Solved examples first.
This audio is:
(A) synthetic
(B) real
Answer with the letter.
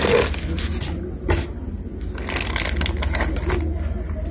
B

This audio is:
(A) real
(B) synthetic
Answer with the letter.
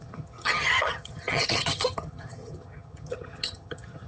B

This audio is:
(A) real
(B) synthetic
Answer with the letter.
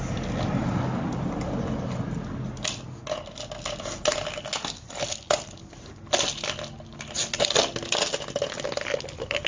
A